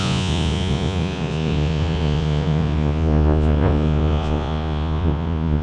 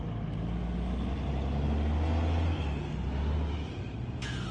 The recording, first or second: second